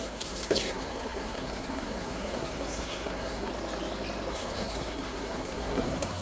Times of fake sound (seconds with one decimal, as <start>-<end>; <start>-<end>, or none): 0.0-3.5; 4.3-6.2